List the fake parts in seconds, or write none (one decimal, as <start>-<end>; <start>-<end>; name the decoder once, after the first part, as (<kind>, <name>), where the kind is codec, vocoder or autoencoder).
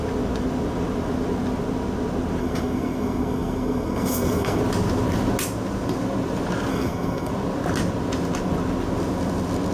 2.4-4.6 (codec, SNAC); 6.7-7.3